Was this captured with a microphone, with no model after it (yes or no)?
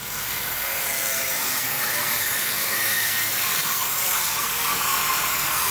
no